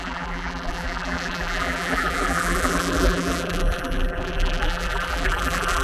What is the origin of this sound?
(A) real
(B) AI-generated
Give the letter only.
B